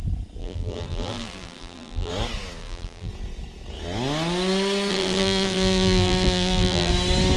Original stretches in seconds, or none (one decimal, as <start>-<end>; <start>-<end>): 0.0-0.4; 2.1-2.6; 3.1-4.9; 6.9-7.4